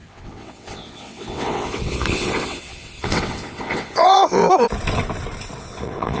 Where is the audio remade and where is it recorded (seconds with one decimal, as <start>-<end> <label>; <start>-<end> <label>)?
0.0-4.4 remade; 4.4-5.6 recorded; 5.6-6.2 remade